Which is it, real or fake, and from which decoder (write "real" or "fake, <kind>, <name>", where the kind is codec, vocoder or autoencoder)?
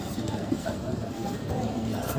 fake, codec, SNAC